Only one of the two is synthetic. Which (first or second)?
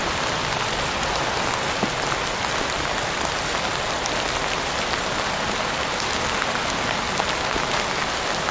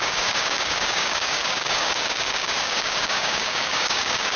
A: second